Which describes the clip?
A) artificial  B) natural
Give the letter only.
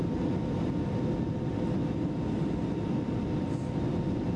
B